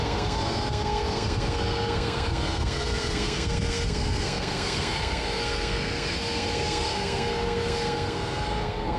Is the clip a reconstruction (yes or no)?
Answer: yes